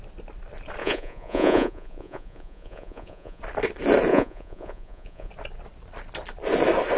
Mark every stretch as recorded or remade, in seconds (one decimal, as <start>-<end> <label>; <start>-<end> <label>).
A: 0.0-0.8 recorded; 0.8-3.4 remade; 3.4-4.1 recorded; 4.1-5.3 remade; 5.3-7.0 recorded

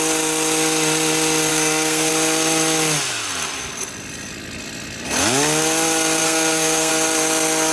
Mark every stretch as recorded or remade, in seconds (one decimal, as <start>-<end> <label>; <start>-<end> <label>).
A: 0.0-1.5 recorded; 1.5-2.1 remade; 2.1-6.2 recorded; 6.2-6.9 remade; 6.9-7.7 recorded

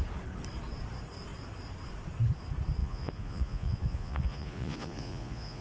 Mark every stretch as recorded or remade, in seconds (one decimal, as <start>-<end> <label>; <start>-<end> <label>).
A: 0.0-2.8 recorded; 2.8-5.6 remade

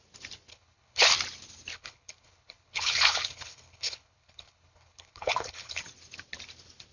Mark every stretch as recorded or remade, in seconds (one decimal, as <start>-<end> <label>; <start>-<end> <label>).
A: 0.0-0.5 recorded; 0.5-1.1 remade; 1.1-1.7 recorded; 1.7-5.8 remade; 5.8-6.9 recorded